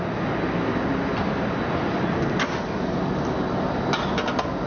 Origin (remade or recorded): recorded